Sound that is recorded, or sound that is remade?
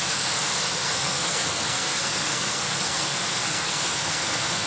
remade